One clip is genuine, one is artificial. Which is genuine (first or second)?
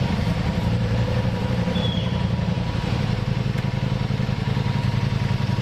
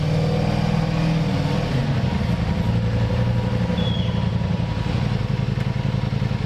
second